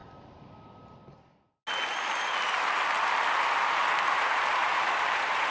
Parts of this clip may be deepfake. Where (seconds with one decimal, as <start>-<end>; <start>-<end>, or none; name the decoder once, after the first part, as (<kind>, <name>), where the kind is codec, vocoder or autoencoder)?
3.3-5.5 (vocoder, BigVGAN v2)